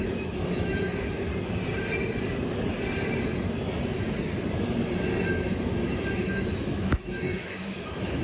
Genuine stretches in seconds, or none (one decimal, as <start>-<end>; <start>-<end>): 1.3-5.3